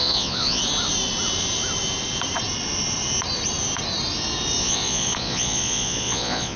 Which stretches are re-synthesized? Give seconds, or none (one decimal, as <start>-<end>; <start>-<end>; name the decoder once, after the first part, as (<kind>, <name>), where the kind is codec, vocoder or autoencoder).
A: 0.0-0.6 (vocoder, Vocos); 4.6-6.6